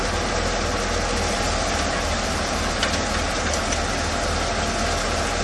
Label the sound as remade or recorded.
recorded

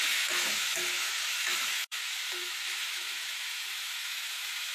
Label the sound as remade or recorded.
remade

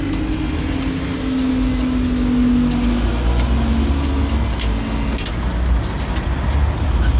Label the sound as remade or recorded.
recorded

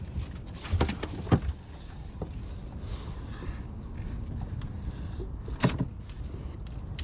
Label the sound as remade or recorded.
recorded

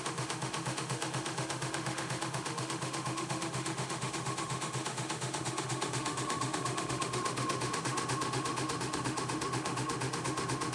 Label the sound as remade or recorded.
remade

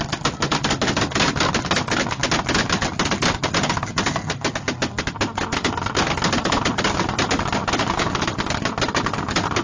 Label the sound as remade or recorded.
recorded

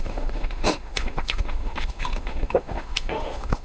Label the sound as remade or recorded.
remade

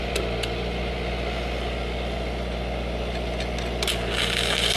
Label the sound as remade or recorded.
recorded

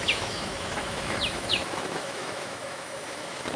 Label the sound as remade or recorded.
remade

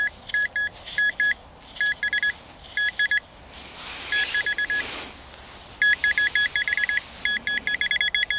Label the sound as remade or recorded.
recorded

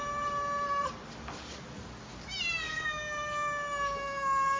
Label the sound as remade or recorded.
recorded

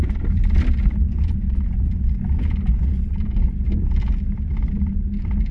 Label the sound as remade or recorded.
recorded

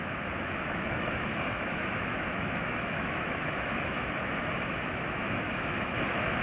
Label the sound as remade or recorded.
remade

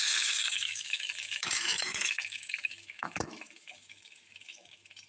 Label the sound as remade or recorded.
remade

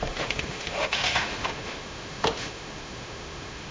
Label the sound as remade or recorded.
remade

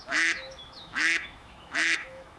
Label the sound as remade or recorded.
remade